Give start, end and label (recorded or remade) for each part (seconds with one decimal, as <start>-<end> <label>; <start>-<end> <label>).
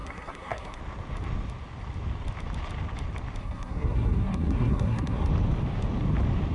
0.0-0.8 remade; 0.8-3.4 recorded; 3.4-5.3 remade; 5.3-6.5 recorded